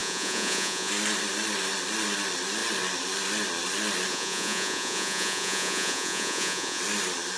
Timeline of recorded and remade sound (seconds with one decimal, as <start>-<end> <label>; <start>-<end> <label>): 0.0-0.9 remade; 0.9-4.1 recorded; 4.1-6.8 remade; 6.8-7.4 recorded